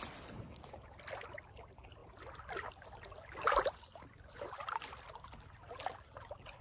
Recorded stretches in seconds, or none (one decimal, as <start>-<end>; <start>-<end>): 0.0-6.6